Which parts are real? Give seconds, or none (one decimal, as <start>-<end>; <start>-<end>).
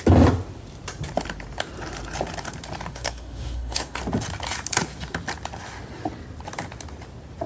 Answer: 0.0-2.9; 4.0-7.5